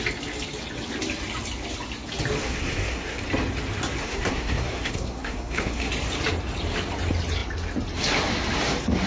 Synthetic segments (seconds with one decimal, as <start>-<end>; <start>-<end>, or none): 2.4-3.2; 4.0-5.9

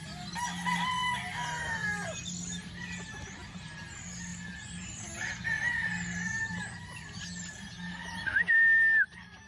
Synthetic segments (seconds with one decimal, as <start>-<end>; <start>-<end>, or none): none

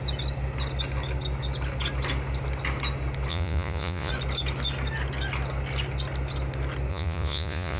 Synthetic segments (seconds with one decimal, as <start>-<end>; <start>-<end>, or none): 3.3-4.1; 6.9-7.8